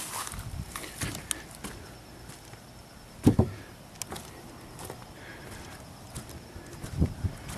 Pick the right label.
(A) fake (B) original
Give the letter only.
B